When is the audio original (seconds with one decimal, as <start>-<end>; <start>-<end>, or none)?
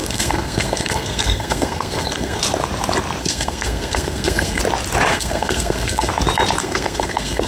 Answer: 2.4-3.2; 4.6-5.1; 6.1-6.6